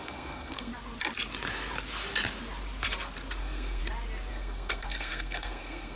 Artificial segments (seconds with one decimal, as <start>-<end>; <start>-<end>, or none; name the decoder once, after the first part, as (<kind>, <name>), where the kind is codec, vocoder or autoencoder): 0.0-0.7 (codec, SNAC); 3.4-3.8; 4.3-6.0